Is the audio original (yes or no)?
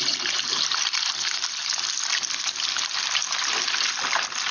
yes